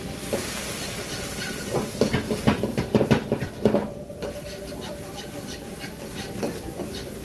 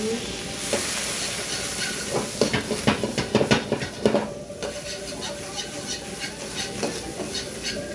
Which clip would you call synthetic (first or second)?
first